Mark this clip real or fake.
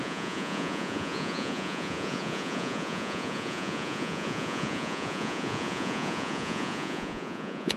fake